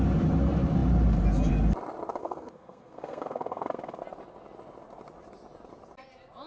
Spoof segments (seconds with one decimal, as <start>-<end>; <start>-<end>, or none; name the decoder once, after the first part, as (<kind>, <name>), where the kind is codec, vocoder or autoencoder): 2.2-4.0 (codec, SNAC)